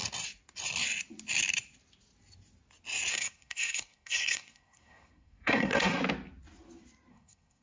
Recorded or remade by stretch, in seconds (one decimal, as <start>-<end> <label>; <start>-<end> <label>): 0.0-3.1 recorded; 3.1-6.0 remade; 6.0-7.1 recorded; 7.1-7.6 remade